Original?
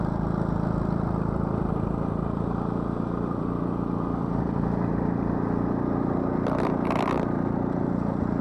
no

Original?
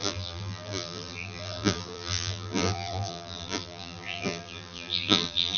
no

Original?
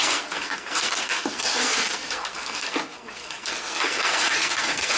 no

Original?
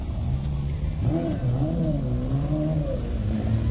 yes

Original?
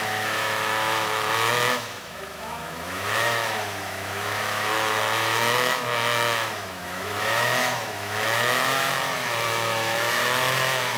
no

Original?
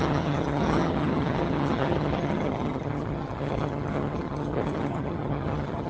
no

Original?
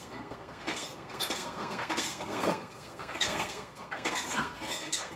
no